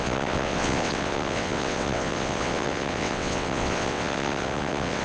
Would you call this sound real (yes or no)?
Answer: no